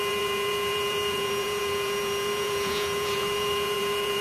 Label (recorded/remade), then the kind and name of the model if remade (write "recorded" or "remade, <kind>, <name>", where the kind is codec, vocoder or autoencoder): remade, vocoder, Vocos